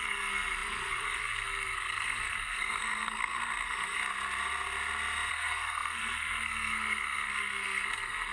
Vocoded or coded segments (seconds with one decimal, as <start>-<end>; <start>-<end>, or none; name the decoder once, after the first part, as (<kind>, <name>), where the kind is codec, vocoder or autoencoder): 0.0-4.0 (codec, SNAC); 5.3-8.3